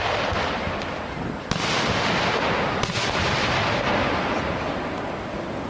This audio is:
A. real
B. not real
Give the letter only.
A